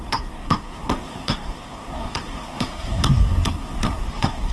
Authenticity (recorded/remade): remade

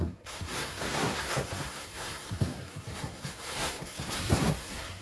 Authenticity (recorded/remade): remade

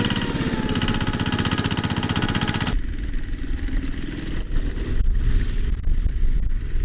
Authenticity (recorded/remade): recorded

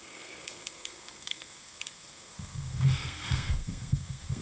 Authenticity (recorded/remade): remade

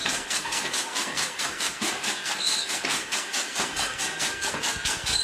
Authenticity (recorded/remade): remade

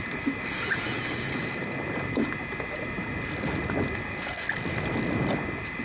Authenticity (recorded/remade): recorded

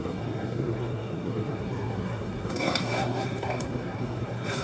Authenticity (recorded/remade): remade